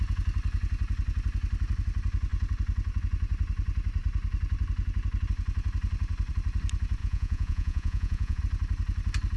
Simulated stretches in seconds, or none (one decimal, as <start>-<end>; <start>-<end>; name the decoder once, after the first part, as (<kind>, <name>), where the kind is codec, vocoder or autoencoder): 7.0-8.4 (vocoder, Vocos)